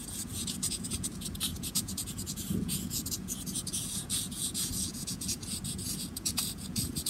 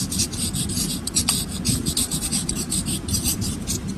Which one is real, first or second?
second